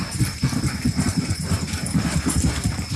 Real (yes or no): no